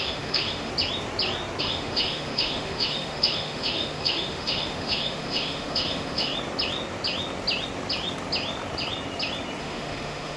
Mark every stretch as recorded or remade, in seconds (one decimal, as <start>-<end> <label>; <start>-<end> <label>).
0.0-0.7 remade; 0.7-1.6 recorded; 1.6-6.3 remade; 6.3-9.6 recorded; 9.6-10.4 remade